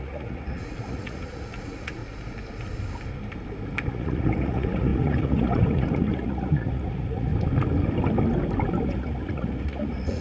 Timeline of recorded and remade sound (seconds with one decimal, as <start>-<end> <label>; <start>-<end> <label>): 0.0-2.0 remade; 2.0-3.9 recorded; 3.9-7.3 remade; 7.3-8.8 recorded; 8.8-10.2 remade